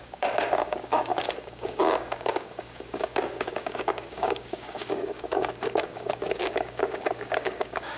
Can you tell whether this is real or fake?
fake